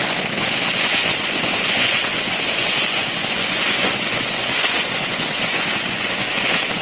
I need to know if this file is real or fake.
fake